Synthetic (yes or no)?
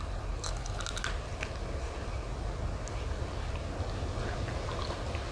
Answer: no